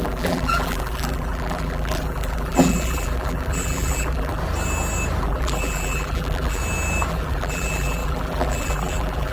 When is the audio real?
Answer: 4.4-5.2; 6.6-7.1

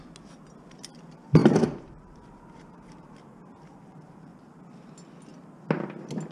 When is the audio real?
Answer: 0.0-1.4; 4.5-6.3

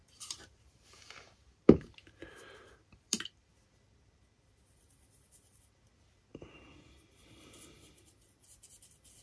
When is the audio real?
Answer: 3.2-9.2

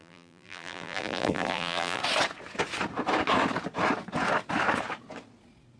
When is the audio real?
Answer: 2.0-5.8

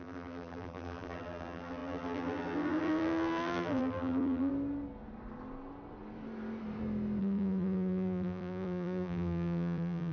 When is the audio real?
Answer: 4.5-7.2

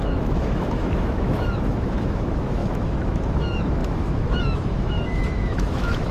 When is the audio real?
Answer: none